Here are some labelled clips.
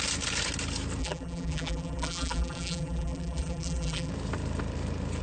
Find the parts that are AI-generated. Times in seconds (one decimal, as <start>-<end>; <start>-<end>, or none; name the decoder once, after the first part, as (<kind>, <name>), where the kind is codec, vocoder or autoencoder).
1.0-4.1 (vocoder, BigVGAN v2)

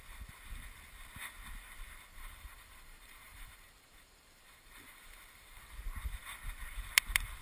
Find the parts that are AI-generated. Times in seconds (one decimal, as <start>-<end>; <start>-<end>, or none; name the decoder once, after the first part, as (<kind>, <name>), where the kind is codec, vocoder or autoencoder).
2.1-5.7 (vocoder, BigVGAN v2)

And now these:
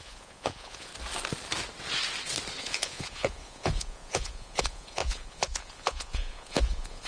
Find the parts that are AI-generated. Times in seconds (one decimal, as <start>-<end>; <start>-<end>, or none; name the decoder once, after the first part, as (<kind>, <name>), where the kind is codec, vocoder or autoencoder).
0.0-0.9 (vocoder, Vocos); 2.6-7.1